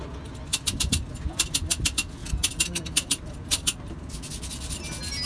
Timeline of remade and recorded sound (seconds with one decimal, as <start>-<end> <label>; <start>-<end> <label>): 0.0-0.5 recorded; 0.5-1.1 remade; 1.1-2.2 recorded; 2.2-4.8 remade; 4.8-5.3 recorded